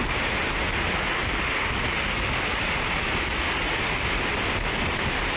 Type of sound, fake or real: real